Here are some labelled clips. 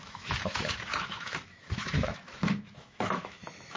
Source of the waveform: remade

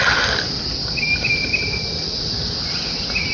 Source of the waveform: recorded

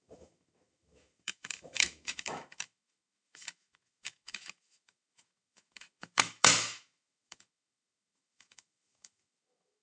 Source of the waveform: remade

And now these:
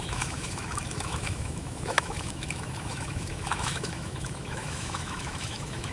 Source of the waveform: remade